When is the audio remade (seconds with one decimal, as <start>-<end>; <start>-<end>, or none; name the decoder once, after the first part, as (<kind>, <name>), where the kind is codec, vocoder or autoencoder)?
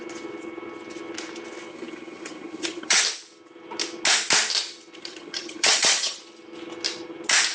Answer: 1.7-3.0 (vocoder, HiFi-GAN); 5.0-6.2